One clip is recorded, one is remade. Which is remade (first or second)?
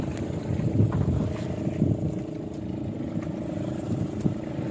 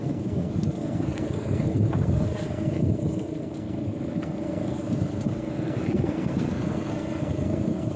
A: second